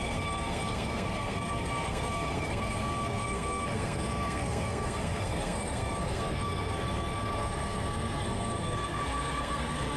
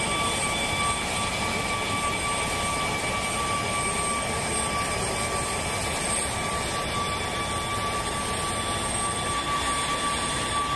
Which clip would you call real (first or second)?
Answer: second